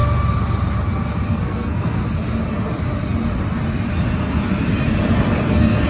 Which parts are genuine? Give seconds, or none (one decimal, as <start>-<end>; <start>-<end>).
0.0-1.3; 2.0-5.5